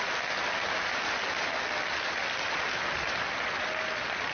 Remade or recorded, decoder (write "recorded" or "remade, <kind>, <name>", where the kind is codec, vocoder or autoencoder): recorded